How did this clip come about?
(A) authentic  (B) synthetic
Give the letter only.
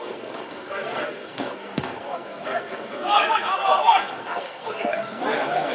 B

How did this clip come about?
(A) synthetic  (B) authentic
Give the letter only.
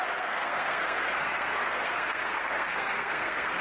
A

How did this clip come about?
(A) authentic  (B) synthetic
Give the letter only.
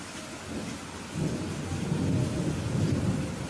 A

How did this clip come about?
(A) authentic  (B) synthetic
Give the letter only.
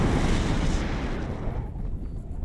A